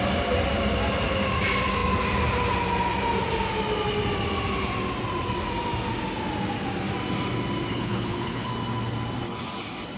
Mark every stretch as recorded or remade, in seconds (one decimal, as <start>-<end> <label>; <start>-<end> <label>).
0.0-7.7 recorded; 7.7-8.5 remade; 8.5-10.0 recorded